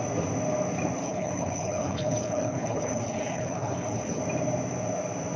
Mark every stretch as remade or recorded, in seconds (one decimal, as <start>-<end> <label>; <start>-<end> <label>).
0.0-1.0 recorded; 1.0-4.2 remade; 4.2-5.4 recorded